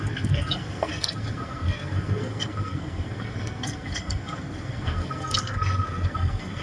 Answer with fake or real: fake